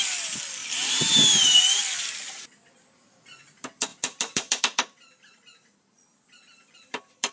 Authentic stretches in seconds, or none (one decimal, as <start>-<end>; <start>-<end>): 0.0-0.6; 2.3-3.9; 4.6-6.1